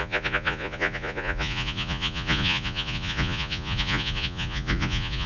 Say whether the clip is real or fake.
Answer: fake